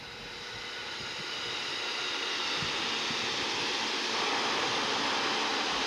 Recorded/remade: recorded